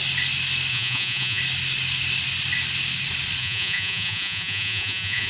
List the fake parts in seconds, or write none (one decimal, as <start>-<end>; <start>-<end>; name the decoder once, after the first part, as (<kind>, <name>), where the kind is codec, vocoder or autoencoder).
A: 0.7-1.4 (vocoder, Vocos); 3.4-5.3